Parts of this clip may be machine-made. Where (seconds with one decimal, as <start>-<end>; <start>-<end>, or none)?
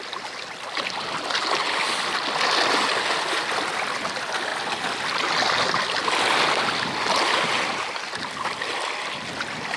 none